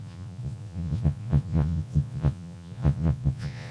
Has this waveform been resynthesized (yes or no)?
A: yes